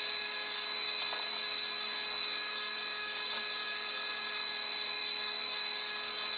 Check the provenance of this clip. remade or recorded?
remade